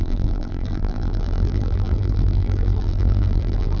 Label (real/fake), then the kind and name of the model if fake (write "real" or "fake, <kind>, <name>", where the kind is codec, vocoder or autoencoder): fake, vocoder, BigVGAN v2